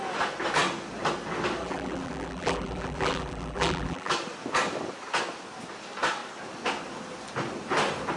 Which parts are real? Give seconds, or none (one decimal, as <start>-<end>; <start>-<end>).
0.0-1.6; 4.1-8.2